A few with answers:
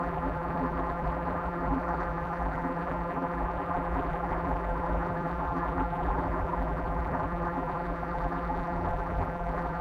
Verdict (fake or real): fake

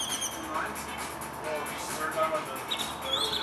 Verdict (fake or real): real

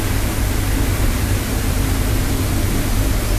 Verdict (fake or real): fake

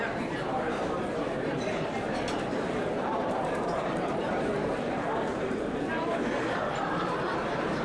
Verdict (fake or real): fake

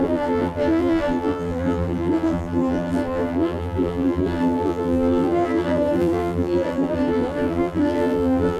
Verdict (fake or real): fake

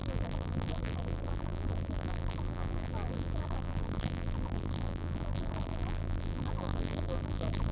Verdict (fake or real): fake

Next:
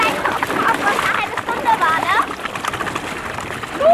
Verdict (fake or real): real